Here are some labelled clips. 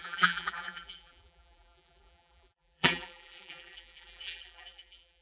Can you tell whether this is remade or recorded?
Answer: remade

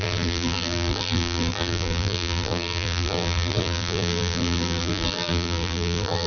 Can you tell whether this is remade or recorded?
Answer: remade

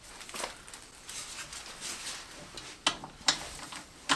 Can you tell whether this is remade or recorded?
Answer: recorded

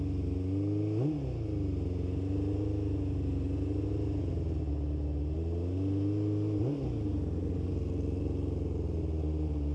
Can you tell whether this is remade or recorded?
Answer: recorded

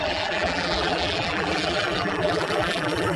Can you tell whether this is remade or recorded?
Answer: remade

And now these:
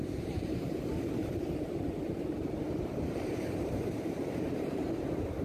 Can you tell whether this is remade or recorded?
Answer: remade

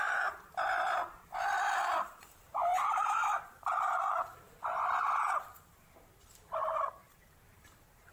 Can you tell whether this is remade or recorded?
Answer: remade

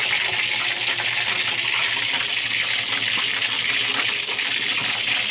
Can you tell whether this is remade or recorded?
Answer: recorded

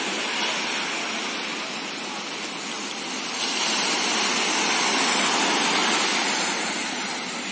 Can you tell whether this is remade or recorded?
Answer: recorded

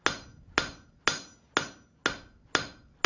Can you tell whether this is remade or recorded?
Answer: recorded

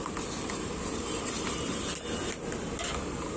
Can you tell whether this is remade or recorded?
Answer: recorded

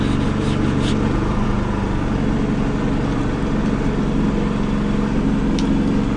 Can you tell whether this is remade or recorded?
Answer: recorded